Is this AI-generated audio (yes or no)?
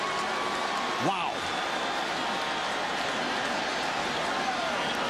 no